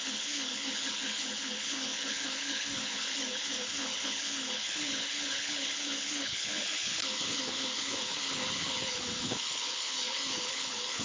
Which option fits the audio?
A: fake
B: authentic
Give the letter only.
A